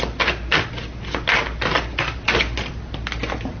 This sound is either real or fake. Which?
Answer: real